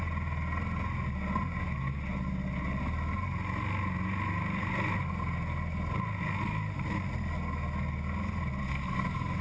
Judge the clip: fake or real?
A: real